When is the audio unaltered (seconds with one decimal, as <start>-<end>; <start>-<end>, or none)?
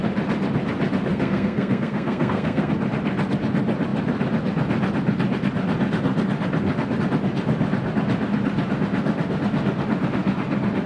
0.0-1.1; 2.7-10.9